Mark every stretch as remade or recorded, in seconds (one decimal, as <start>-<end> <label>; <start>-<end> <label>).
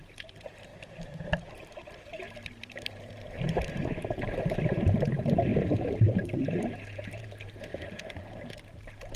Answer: 0.0-9.2 remade